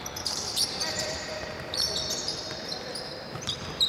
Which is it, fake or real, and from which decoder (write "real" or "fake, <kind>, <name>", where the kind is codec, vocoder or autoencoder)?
fake, vocoder, BigVGAN v2